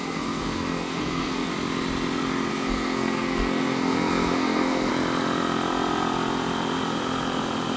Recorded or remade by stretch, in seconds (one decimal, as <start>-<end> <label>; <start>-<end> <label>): 0.0-1.5 remade; 1.5-2.5 recorded; 2.5-4.9 remade; 4.9-7.8 recorded